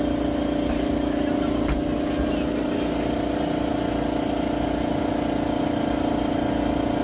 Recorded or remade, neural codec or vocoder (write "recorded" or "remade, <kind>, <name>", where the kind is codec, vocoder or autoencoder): recorded